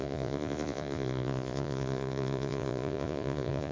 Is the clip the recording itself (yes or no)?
no